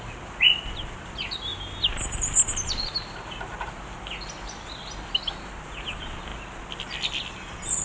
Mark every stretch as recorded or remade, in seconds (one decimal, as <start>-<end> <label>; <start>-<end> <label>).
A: 0.0-7.8 recorded